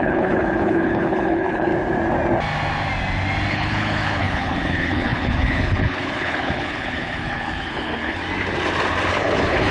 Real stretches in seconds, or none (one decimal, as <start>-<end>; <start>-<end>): 1.7-3.5; 8.2-9.1